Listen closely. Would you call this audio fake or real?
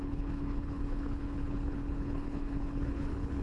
fake